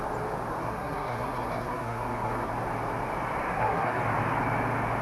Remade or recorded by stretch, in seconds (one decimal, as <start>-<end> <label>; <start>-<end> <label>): 0.0-0.6 recorded; 0.6-2.5 remade; 2.5-3.5 recorded; 3.5-4.0 remade; 4.0-5.0 recorded